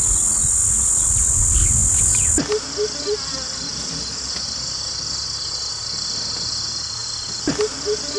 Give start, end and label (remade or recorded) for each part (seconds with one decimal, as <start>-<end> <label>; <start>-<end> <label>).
0.0-8.2 recorded

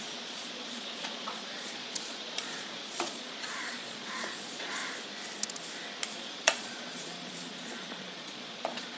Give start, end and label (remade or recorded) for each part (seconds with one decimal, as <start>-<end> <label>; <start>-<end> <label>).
0.0-4.8 remade; 4.8-6.1 recorded; 6.1-9.0 remade

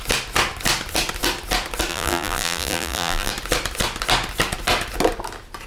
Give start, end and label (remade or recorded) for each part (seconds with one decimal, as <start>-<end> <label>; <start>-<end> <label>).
0.0-1.9 recorded; 1.9-3.3 remade; 3.3-5.7 recorded

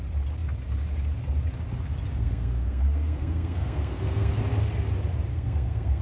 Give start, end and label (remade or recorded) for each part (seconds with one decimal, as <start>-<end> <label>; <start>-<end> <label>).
0.0-2.1 recorded; 2.1-4.4 remade; 4.4-5.3 recorded; 5.3-6.0 remade

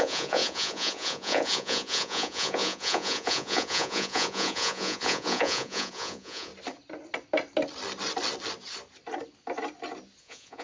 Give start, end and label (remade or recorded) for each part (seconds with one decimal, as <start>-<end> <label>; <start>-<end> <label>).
0.0-6.5 remade; 6.5-10.2 recorded; 10.2-10.6 remade